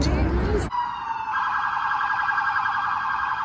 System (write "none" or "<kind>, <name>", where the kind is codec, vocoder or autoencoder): none